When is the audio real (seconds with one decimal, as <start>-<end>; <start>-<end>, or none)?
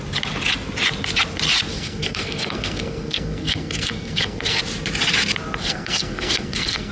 0.0-1.7; 4.6-5.6